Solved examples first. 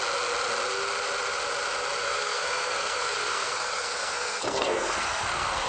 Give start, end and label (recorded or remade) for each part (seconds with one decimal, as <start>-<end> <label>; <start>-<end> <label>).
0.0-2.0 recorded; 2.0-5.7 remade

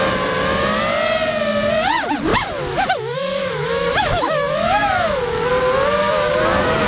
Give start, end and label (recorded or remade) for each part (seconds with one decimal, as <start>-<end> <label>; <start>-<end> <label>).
0.0-2.3 recorded; 2.3-5.5 remade; 5.5-6.9 recorded

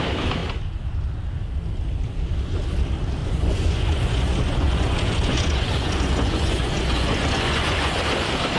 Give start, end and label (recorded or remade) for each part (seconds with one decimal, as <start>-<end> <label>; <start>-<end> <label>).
0.0-3.2 recorded; 3.2-8.0 remade; 8.0-8.6 recorded

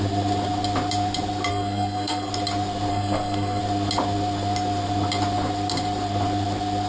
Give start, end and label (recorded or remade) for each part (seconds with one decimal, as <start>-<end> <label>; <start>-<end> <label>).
0.0-1.5 recorded; 1.5-2.3 remade; 2.3-2.9 recorded; 2.9-3.6 remade; 3.6-6.9 recorded